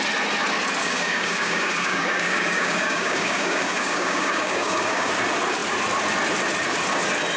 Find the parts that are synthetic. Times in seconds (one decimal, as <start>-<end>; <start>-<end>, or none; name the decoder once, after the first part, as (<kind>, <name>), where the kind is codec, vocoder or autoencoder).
0.8-5.1 (codec, DAC)